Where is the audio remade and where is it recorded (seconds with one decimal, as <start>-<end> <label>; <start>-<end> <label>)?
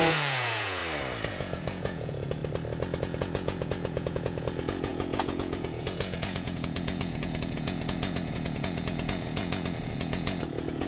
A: 0.0-0.8 remade; 0.8-1.3 recorded; 1.3-2.4 remade; 2.4-3.0 recorded; 3.0-10.9 remade